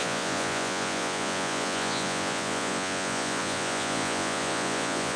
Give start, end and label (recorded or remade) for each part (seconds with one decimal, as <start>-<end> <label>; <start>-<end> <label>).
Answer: 0.0-5.2 remade